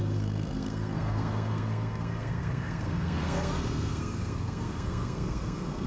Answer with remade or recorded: remade